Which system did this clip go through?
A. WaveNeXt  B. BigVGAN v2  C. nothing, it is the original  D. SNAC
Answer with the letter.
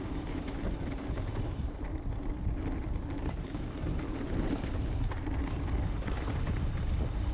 B